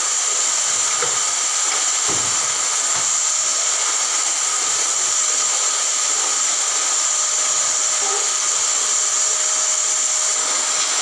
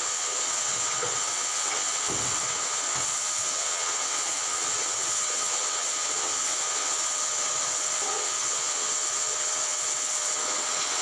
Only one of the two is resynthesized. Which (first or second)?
second